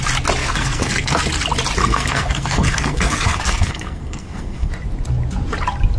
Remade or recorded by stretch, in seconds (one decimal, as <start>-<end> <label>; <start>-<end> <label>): 0.0-0.4 recorded; 0.4-1.2 remade; 1.2-1.8 recorded; 1.8-4.7 remade; 4.7-6.0 recorded

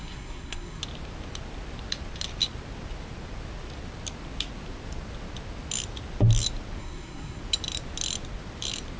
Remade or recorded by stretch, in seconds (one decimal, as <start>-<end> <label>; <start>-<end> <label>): 0.0-0.8 remade; 0.8-6.8 recorded; 6.8-7.4 remade; 7.4-9.0 recorded

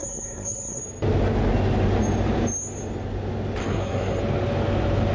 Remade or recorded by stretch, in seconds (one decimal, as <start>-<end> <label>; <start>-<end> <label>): 0.0-0.8 remade; 0.8-3.6 recorded; 3.6-4.2 remade; 4.2-5.1 recorded

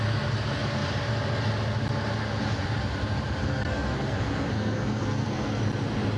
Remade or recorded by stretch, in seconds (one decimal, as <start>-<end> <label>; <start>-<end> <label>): 0.0-3.4 recorded; 3.4-5.6 remade; 5.6-6.2 recorded

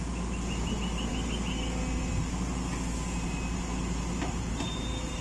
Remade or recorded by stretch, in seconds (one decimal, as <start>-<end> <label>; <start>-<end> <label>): 0.0-5.2 recorded

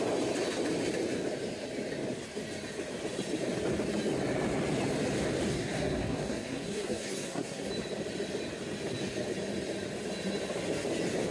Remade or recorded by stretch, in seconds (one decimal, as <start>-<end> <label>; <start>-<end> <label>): 0.0-5.5 recorded; 5.5-7.7 remade; 7.7-11.3 recorded

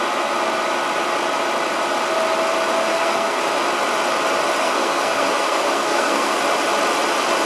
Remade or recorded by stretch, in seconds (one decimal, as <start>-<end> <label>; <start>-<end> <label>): 0.0-2.9 recorded; 2.9-3.4 remade; 3.4-4.6 recorded; 4.6-6.4 remade; 6.4-7.5 recorded